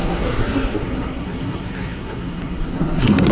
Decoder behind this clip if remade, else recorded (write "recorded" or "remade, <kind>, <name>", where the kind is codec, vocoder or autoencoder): remade, codec, SNAC